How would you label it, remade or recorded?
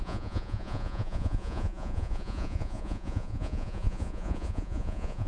remade